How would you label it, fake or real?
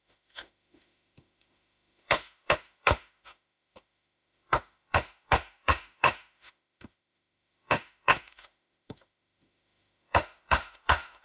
fake